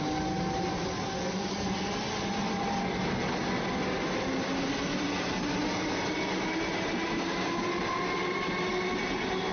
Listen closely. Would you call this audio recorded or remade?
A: recorded